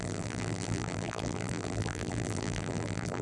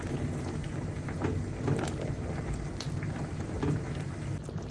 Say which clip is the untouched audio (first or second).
second